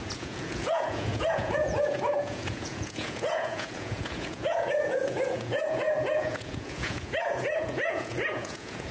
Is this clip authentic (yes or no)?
no